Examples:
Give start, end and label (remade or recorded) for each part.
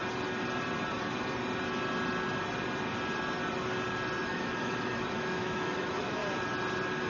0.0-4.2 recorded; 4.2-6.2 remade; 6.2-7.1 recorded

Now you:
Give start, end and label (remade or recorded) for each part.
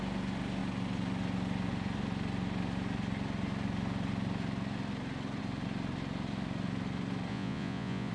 0.0-7.3 recorded; 7.3-8.1 remade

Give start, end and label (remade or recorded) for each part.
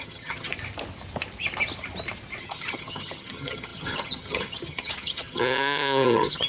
0.0-0.5 remade; 0.5-2.4 recorded; 2.4-6.5 remade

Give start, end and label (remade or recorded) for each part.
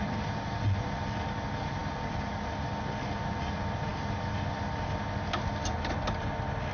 0.0-6.7 recorded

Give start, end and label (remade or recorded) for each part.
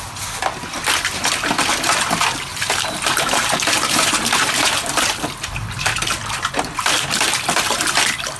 0.0-2.5 recorded; 2.5-4.9 remade; 4.9-8.4 recorded